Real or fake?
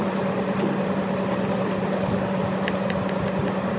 real